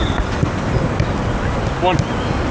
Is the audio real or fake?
real